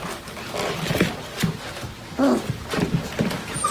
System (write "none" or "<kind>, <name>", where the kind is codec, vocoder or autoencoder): none